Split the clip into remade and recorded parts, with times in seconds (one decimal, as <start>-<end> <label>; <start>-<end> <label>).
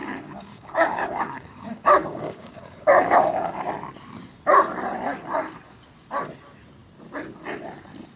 0.0-3.7 remade; 3.7-8.2 recorded